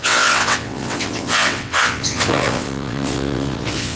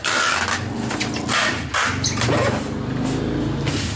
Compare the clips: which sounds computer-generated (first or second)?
first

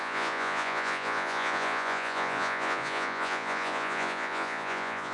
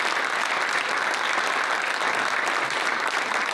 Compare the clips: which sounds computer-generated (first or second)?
first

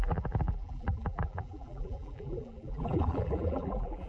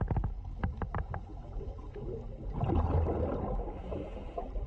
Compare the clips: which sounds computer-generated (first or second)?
first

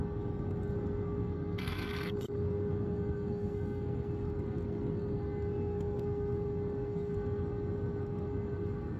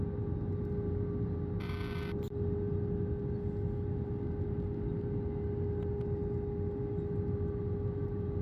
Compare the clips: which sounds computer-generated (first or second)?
first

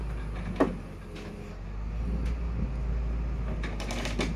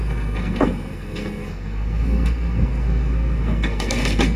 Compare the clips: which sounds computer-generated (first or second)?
second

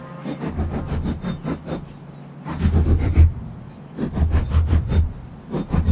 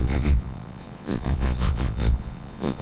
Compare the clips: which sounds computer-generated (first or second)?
second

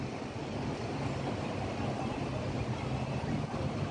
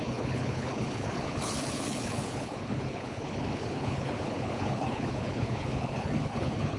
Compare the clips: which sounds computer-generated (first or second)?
second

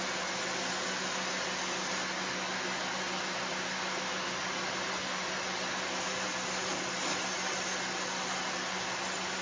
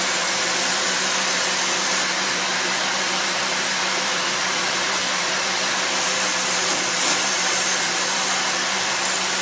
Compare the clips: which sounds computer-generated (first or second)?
second